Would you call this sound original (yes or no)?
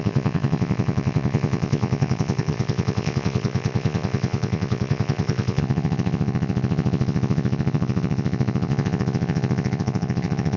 no